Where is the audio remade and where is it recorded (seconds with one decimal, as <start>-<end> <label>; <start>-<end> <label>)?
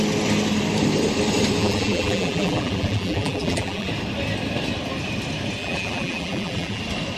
0.0-1.6 recorded; 1.6-3.9 remade; 3.9-5.6 recorded; 5.6-6.8 remade; 6.8-7.2 recorded